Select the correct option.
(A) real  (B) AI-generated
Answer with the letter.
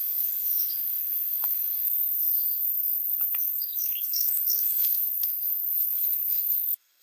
B